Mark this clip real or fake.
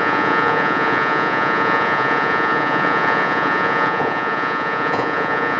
fake